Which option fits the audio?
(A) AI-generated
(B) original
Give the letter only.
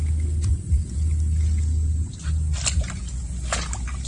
B